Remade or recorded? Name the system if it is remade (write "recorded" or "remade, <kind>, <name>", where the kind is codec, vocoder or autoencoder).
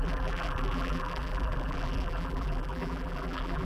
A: remade, vocoder, BigVGAN v2